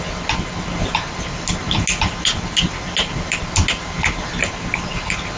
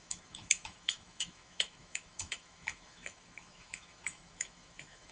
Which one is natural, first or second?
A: first